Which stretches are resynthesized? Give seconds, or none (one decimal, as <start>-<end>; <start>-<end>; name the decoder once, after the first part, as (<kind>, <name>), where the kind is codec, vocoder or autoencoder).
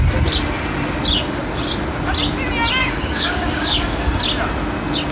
2.8-4.1 (codec, DAC)